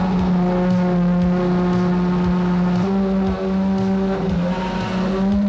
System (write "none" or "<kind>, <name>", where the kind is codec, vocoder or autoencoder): none